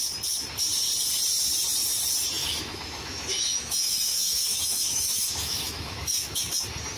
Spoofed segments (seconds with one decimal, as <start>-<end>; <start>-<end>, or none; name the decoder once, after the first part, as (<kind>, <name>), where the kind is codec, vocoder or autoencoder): 2.4-6.6 (autoencoder, DAC-VAE)